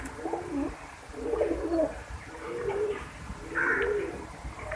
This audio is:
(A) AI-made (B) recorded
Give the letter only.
B